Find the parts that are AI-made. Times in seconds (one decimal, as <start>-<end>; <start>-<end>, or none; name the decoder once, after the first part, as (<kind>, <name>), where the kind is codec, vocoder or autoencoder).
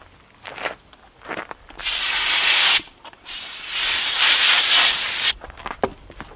1.8-4.3 (vocoder, BigVGAN v2)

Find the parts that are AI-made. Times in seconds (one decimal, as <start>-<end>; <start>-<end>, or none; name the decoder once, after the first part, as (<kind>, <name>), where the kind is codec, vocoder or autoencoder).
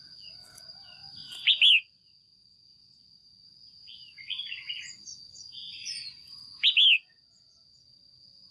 none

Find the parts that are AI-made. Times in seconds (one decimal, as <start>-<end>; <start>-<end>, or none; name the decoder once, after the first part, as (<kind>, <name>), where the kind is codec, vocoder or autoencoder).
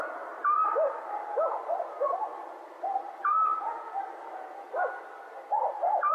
none